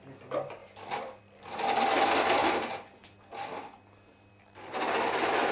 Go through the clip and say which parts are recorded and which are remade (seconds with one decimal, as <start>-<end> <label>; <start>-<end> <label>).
0.0-5.5 recorded